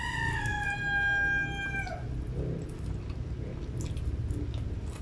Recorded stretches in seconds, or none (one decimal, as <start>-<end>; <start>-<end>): 0.0-5.0